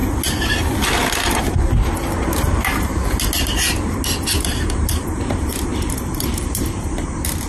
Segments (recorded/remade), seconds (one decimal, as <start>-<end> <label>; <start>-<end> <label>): 0.0-1.1 recorded; 1.1-3.0 remade; 3.0-4.4 recorded; 4.4-5.7 remade; 5.7-6.3 recorded; 6.3-7.5 remade